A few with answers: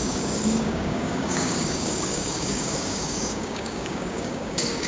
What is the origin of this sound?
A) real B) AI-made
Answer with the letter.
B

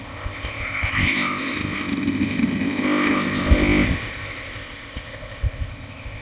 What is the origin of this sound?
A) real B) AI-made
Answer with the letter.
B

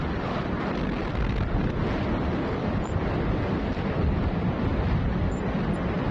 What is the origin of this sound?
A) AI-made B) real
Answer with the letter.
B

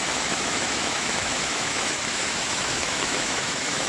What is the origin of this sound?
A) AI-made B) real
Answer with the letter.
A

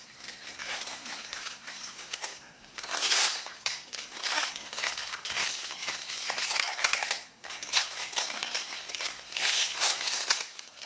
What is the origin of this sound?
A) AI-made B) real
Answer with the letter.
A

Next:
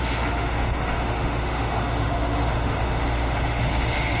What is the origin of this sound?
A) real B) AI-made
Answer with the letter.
B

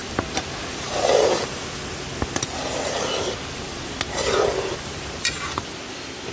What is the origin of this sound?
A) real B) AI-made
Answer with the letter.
A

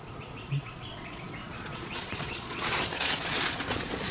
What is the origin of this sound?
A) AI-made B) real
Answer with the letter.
A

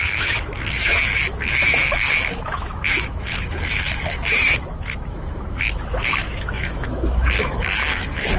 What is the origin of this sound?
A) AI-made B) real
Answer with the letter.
A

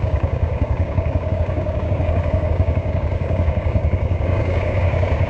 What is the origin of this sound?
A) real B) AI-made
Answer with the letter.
B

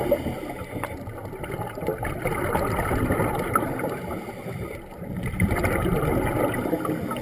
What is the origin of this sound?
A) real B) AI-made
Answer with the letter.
A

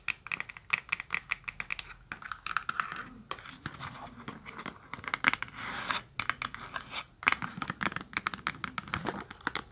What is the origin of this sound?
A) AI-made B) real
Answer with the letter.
B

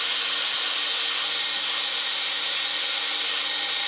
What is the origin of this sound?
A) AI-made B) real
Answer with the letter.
B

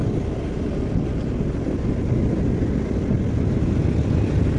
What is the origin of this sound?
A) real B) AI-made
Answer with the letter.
A